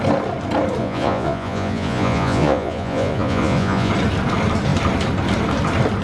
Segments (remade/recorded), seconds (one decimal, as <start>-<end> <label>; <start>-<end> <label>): 0.0-0.8 recorded; 0.8-3.9 remade; 3.9-6.0 recorded